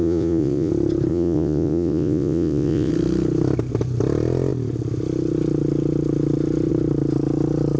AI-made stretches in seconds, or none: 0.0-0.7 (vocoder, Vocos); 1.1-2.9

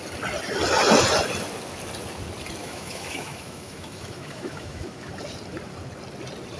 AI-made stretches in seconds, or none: 2.6-5.1 (autoencoder, DAC-VAE)

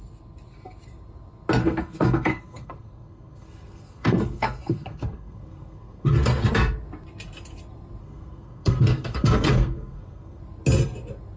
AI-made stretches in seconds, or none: 1.6-6.4 (codec, SNAC); 8.0-10.4

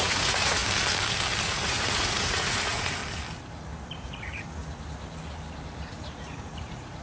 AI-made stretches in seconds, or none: 0.0-0.6 (vocoder, Vocos); 1.4-3.0; 4.0-4.6; 5.9-7.0

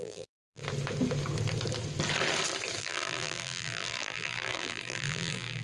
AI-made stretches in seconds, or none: 0.0-0.6 (vocoder, BigVGAN v2); 2.8-5.6